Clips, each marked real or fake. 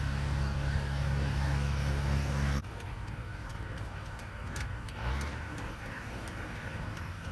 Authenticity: fake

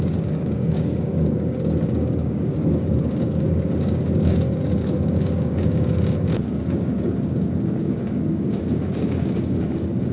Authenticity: fake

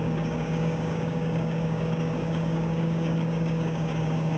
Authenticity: fake